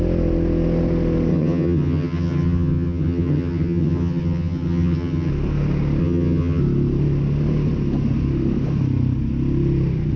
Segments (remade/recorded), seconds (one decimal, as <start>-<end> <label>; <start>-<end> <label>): 0.0-1.3 recorded; 1.3-5.3 remade; 5.3-6.0 recorded; 6.0-6.6 remade; 6.6-10.2 recorded